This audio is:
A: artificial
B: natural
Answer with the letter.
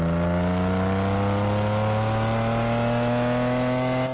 B